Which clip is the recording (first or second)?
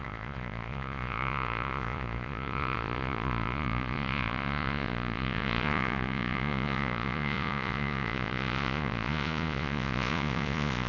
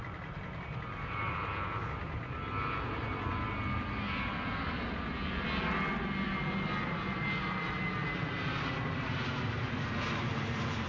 second